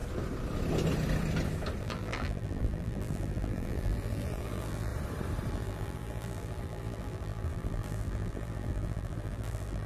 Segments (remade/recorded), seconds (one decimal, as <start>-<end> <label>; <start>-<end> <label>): 0.0-1.8 recorded; 1.8-4.9 remade; 4.9-5.5 recorded; 5.5-9.9 remade